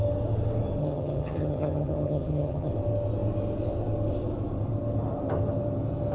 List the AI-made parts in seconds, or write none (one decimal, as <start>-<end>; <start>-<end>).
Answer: 0.8-2.7